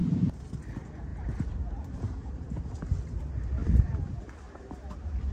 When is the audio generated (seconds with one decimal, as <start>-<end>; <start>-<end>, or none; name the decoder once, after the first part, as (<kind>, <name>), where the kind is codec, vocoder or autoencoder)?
0.0-0.6 (vocoder, BigVGAN v2); 1.1-2.6; 3.6-5.3